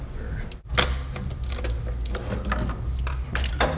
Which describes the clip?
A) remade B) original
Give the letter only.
B